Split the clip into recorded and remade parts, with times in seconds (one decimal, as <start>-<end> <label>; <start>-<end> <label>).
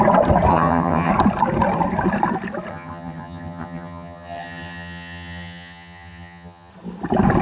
0.0-0.5 recorded; 0.5-1.1 remade; 1.1-2.7 recorded; 2.7-6.7 remade; 6.7-7.4 recorded